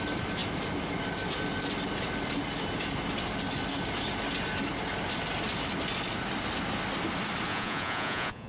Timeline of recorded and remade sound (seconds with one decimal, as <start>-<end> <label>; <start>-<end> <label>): 0.0-7.5 recorded; 7.5-8.5 remade

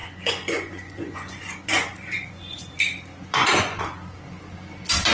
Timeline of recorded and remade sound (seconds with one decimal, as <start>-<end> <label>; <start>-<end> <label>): 0.0-2.7 remade; 2.7-3.1 recorded; 3.1-3.8 remade; 3.8-5.1 recorded